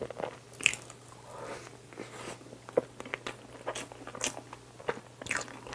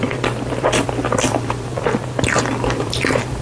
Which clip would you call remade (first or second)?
second